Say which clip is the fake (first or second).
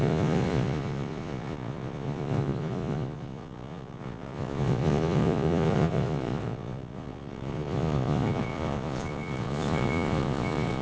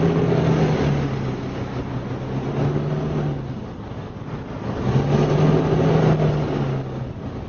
first